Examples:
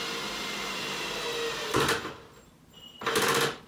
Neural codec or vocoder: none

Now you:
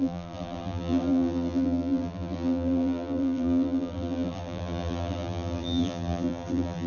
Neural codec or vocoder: vocoder, BigVGAN v2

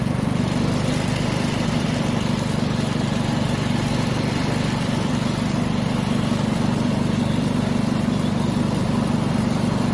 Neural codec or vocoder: vocoder, BigVGAN v2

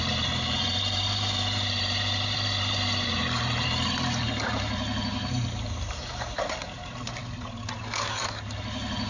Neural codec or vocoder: vocoder, BigVGAN v2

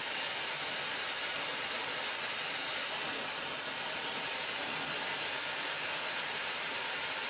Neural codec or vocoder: vocoder, BigVGAN v2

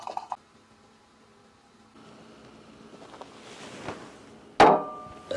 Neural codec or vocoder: none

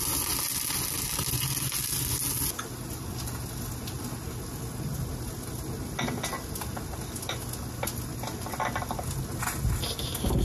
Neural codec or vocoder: none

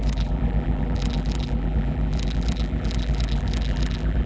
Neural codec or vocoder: vocoder, BigVGAN v2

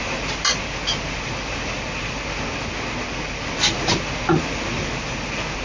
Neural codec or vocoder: none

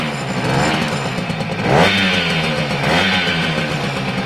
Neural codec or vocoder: none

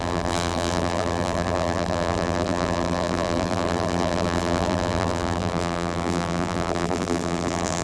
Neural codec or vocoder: vocoder, BigVGAN v2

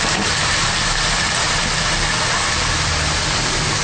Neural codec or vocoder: vocoder, BigVGAN v2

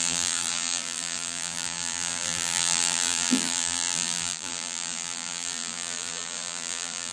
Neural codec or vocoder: vocoder, BigVGAN v2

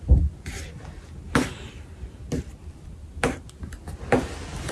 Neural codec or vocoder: none